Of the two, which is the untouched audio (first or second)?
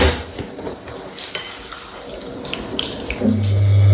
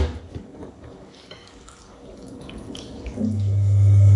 first